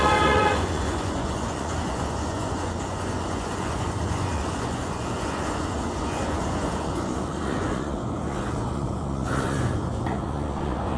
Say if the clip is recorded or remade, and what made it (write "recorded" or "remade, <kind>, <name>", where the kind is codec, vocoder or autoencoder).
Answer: remade, vocoder, Vocos